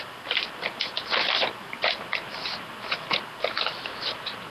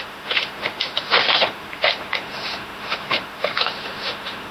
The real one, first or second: first